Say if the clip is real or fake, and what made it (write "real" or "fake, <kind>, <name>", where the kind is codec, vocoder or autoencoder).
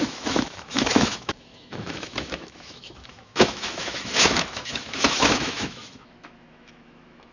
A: fake, autoencoder, DAC-VAE